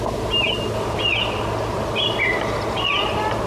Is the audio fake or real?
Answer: real